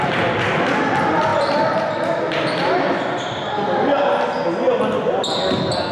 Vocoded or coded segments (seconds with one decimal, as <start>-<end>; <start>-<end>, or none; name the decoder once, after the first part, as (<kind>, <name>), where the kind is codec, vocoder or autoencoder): none